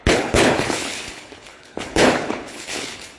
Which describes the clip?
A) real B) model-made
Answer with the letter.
B